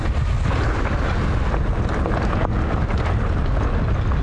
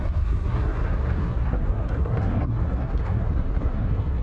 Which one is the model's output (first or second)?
second